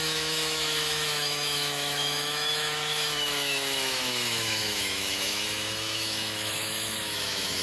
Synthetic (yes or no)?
yes